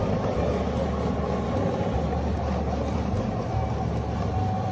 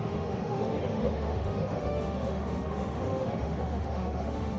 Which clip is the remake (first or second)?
second